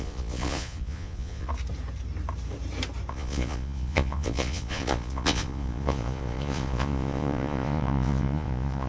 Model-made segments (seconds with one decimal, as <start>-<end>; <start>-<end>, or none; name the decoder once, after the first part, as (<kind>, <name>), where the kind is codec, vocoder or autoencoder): 0.0-1.5 (vocoder, Vocos); 3.1-8.9